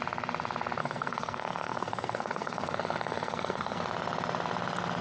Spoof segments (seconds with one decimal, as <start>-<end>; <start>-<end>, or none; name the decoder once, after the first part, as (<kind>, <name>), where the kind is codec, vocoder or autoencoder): 0.8-3.8 (codec, SNAC)